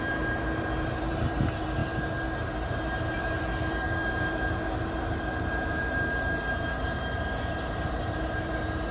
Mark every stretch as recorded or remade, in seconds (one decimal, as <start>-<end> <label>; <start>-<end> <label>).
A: 0.0-8.9 remade